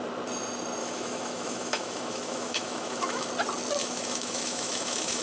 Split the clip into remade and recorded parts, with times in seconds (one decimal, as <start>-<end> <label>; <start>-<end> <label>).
0.0-0.8 recorded; 0.8-3.3 remade; 3.3-3.8 recorded; 3.8-5.2 remade